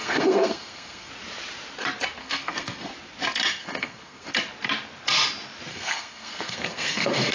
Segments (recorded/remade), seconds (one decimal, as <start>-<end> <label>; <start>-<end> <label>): 0.0-1.1 remade; 1.1-2.2 recorded; 2.2-2.9 remade; 2.9-3.6 recorded; 3.6-4.3 remade; 4.3-5.7 recorded; 5.7-7.3 remade